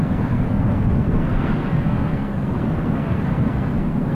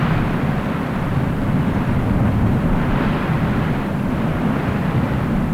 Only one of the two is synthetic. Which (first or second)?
first